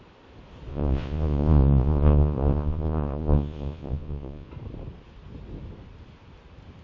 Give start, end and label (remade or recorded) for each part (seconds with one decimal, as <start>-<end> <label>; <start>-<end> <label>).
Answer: 0.0-0.7 recorded; 0.7-4.5 remade; 4.5-6.8 recorded